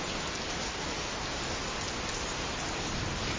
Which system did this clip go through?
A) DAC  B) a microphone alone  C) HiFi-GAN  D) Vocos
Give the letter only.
B